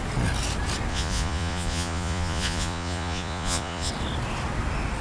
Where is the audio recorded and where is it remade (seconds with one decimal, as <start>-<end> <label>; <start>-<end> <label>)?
0.0-0.9 recorded; 0.9-3.9 remade; 3.9-5.0 recorded

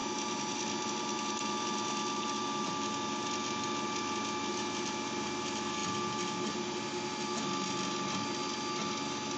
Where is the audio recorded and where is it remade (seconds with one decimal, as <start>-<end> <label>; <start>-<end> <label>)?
0.0-9.4 recorded

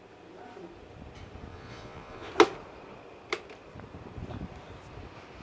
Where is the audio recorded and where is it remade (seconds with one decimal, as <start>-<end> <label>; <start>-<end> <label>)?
0.0-1.5 recorded; 1.5-2.3 remade; 2.3-5.4 recorded

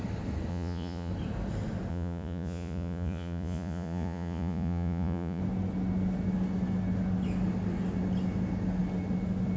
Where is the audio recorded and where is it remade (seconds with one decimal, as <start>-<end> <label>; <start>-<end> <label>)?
0.0-0.5 recorded; 0.5-1.1 remade; 1.1-1.9 recorded; 1.9-5.4 remade; 5.4-9.6 recorded

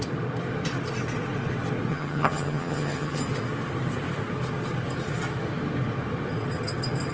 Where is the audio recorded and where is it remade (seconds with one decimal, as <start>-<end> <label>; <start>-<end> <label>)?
0.0-1.9 recorded; 1.9-3.2 remade; 3.2-7.1 recorded